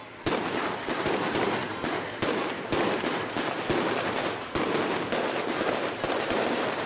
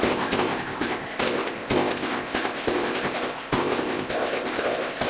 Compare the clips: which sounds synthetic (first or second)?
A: second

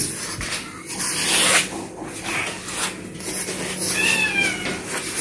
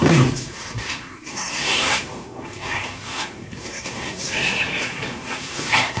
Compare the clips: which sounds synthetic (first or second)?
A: second